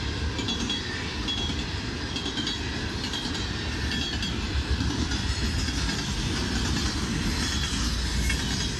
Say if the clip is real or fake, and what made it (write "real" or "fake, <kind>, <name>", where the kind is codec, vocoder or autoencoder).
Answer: real